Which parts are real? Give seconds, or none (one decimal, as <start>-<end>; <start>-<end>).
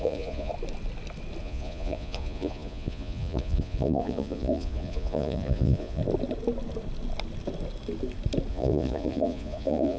0.5-1.4; 6.0-8.5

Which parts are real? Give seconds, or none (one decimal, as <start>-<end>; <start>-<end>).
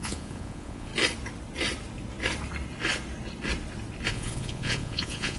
0.9-4.1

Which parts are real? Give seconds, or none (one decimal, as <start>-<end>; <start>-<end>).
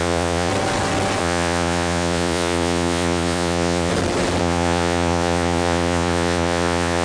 0.5-1.2; 3.9-4.4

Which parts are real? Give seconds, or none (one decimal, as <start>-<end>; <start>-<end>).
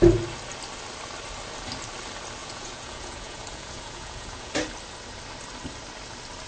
0.0-2.4; 4.5-6.5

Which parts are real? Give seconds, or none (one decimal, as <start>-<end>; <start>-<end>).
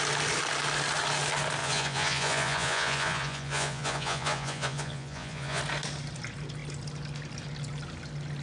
0.0-1.6; 5.6-8.4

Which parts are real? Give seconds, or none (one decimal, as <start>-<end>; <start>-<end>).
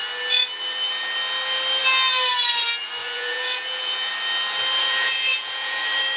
0.0-3.0; 4.1-4.8; 5.8-6.2